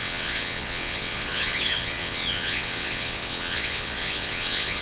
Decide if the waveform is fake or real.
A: fake